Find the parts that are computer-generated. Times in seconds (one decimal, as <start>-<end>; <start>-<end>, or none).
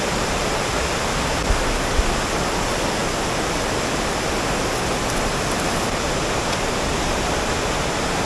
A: none